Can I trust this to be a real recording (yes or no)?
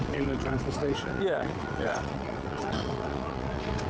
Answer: no